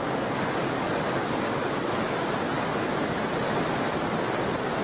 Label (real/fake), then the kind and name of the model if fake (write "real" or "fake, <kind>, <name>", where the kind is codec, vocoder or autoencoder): real